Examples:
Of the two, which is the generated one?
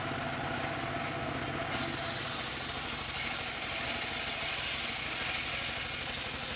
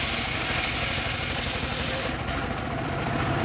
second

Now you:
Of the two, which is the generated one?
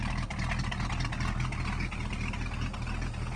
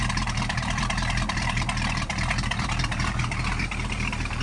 second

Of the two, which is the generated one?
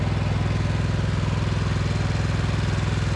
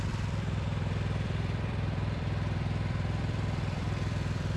second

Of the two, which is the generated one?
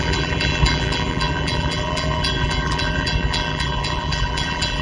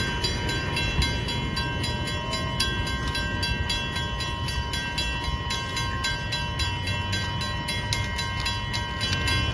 first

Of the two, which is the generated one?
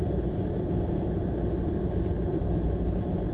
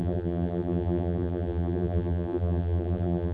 second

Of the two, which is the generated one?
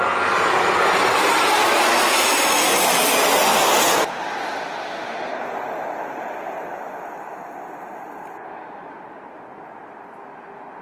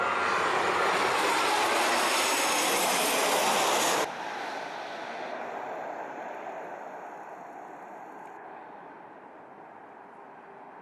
second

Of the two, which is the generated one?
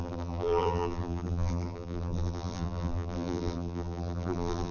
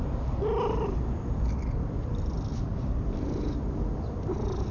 first